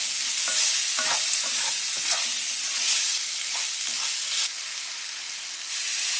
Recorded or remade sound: recorded